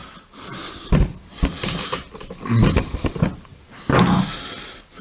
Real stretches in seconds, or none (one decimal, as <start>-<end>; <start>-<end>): 0.0-5.0